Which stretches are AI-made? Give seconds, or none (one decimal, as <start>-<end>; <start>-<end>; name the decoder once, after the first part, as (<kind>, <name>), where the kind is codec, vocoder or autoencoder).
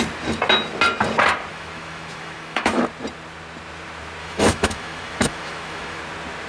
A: 1.5-2.8 (autoencoder, DAC-VAE); 4.2-6.0